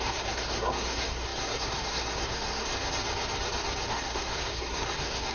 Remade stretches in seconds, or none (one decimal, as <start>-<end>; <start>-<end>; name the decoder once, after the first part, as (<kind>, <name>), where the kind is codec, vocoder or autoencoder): 0.0-2.7 (codec, SNAC); 3.9-5.3